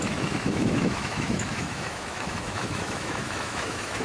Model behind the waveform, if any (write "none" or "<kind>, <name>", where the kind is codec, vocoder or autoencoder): autoencoder, DAC-VAE